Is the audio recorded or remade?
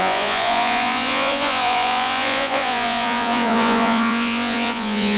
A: remade